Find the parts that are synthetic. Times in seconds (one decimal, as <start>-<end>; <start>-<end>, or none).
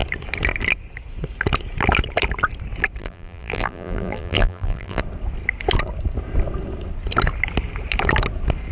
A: 3.0-5.0